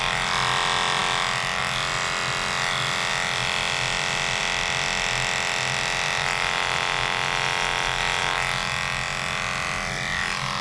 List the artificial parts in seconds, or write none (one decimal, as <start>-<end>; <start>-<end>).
none